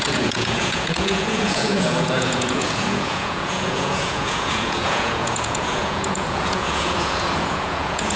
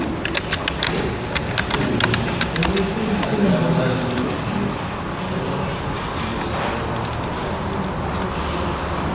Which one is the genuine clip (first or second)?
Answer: second